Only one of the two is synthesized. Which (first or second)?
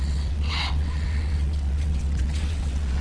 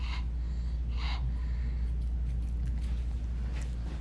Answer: first